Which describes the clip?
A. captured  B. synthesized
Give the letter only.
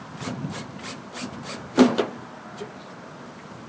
A